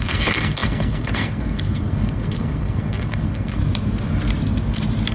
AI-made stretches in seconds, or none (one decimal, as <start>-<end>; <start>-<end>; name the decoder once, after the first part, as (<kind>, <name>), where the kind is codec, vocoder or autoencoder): 0.0-3.6 (codec, SNAC)